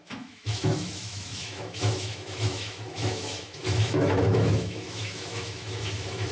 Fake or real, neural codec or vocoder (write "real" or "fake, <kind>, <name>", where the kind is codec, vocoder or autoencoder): fake, autoencoder, DAC-VAE